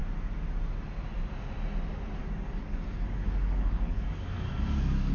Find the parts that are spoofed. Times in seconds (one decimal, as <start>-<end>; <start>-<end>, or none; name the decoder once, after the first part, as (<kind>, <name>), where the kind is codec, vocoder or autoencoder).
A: 2.2-5.1 (codec, DAC)